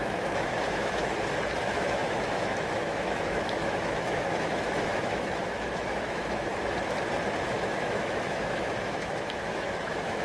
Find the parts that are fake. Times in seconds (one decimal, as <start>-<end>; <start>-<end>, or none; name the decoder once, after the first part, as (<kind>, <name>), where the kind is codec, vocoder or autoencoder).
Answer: 0.0-1.0 (autoencoder, DAC-VAE); 1.6-6.5; 7.5-10.2